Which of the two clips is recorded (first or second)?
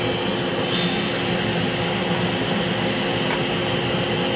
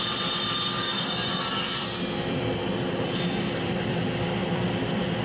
first